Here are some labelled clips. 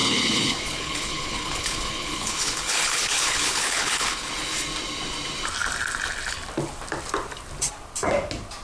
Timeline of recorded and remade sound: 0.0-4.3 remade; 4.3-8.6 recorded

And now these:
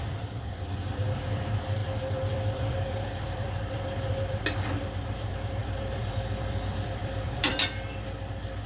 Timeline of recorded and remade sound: 0.0-7.5 remade; 7.5-8.7 recorded